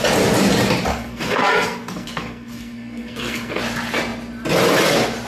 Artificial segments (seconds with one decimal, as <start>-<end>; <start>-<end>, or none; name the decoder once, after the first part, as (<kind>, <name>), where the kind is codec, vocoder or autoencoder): 0.9-3.6 (codec, SNAC)